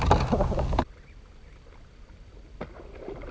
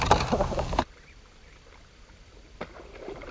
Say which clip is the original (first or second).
first